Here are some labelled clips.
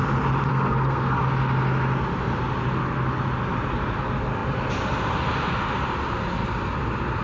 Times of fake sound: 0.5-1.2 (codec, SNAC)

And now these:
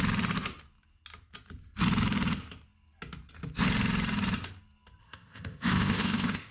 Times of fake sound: 5.0-6.5 (codec, ZipCodec)

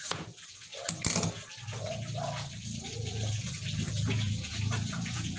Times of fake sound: 0.0-0.7 (vocoder, Vocos); 3.9-5.4

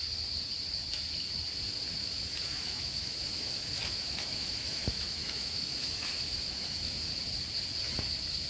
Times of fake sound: 2.0-7.1 (autoencoder, DAC-VAE)

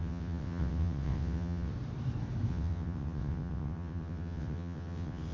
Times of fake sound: 0.0-1.7 (vocoder, WaveNeXt); 2.5-5.3